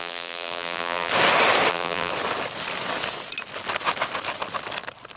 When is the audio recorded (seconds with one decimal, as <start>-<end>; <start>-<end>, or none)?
1.1-1.7; 2.1-5.2

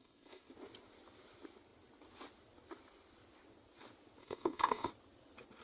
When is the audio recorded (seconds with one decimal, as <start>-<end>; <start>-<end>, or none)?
0.5-4.2; 4.9-5.6

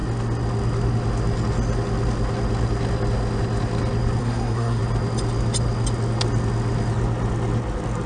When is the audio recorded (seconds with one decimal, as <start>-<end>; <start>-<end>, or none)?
0.0-4.2; 4.8-8.1